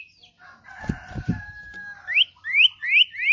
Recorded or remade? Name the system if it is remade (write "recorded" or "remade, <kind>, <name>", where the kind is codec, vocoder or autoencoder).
recorded